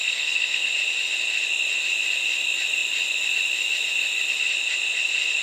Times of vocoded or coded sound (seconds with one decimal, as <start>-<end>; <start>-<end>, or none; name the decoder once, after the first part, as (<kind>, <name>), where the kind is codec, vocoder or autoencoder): 0.0-0.7 (codec, SNAC)